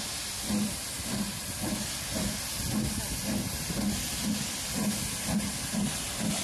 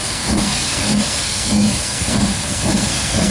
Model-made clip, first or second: second